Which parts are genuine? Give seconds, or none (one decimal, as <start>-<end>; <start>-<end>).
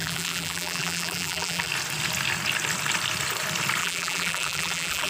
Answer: 1.7-3.8